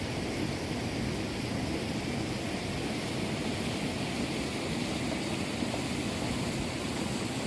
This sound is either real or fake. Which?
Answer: real